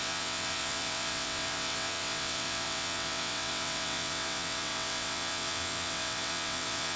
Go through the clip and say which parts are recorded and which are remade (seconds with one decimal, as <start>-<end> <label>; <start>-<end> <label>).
0.0-7.0 remade